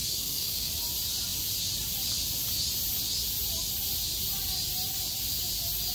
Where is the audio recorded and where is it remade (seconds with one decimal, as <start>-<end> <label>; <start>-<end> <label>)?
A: 0.0-0.7 remade; 0.7-5.9 recorded